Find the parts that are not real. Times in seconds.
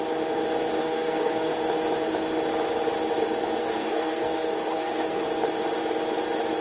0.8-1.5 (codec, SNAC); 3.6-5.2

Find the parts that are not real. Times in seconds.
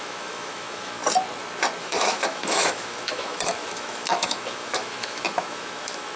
0.0-1.0 (autoencoder, DAC-VAE); 1.8-6.2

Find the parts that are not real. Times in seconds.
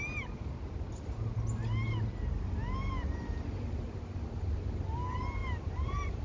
5.4-6.2 (vocoder, BigVGAN v2)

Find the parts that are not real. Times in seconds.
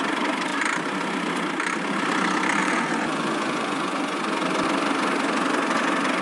2.6-4.2 (vocoder, Vocos)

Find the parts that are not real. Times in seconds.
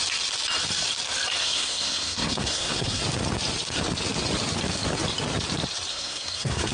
1.4-3.0 (codec, SNAC); 5.9-6.7